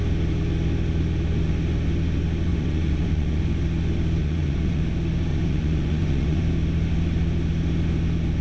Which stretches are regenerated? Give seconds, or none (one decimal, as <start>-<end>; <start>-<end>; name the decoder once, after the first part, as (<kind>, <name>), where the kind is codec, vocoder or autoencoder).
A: 2.5-3.4 (vocoder, Vocos); 4.2-4.8; 5.3-6.4